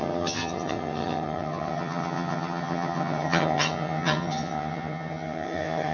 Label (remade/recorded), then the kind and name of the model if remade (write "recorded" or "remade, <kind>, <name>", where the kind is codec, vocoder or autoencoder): remade, vocoder, HiFi-GAN